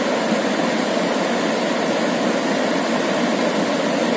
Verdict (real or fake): real